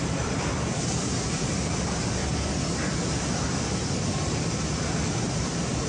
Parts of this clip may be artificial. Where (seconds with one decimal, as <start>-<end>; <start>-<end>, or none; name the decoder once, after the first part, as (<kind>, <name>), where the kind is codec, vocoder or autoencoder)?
0.0-2.2 (vocoder, BigVGAN v2); 4.1-5.9